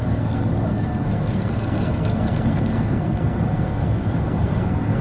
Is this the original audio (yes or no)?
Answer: no